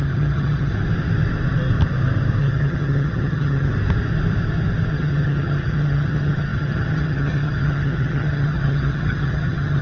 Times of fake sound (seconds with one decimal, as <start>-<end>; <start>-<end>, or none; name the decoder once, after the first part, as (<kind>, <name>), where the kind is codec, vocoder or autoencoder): 0.0-0.7 (vocoder, HiFi-GAN); 2.4-3.7; 4.9-9.8